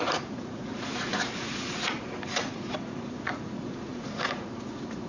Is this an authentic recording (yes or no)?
no